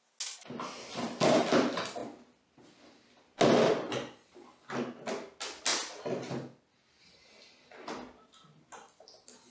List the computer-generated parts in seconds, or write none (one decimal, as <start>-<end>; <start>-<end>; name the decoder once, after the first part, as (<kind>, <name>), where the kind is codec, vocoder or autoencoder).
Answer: none